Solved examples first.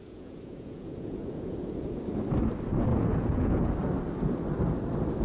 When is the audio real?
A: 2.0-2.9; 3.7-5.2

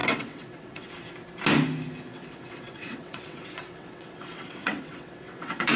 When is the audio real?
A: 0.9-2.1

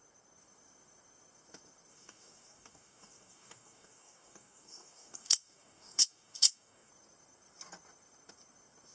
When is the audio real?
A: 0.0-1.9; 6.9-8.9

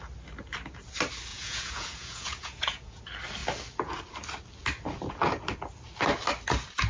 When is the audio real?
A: 0.0-1.3; 3.0-6.9